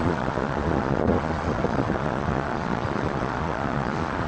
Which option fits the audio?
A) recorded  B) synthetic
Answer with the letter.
B